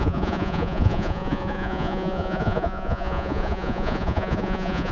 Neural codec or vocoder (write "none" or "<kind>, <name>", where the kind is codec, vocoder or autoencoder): vocoder, Vocos